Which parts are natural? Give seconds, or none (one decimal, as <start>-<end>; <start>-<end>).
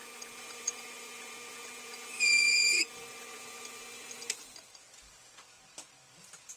2.9-6.6